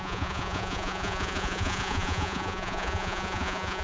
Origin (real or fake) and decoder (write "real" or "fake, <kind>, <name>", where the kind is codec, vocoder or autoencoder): fake, vocoder, Vocos